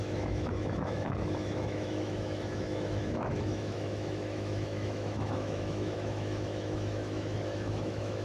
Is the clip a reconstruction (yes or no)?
yes